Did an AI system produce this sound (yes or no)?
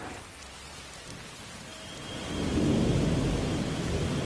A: no